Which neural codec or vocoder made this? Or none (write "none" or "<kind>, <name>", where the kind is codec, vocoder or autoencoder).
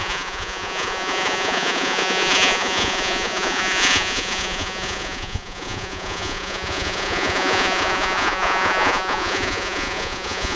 vocoder, Vocos